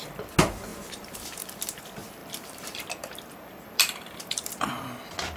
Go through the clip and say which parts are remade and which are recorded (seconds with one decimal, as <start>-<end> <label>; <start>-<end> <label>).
0.0-0.7 recorded; 0.7-1.8 remade; 1.8-2.2 recorded; 2.2-4.7 remade; 4.7-5.4 recorded